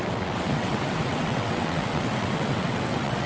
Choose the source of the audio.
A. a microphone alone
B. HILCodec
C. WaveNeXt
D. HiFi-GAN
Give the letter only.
C